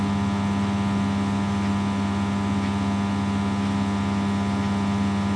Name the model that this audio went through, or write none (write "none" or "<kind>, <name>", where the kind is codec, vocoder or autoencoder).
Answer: none